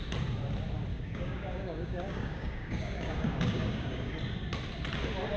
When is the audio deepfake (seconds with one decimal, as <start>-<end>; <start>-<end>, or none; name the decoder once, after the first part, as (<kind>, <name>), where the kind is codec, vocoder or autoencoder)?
0.9-4.1 (codec, DAC)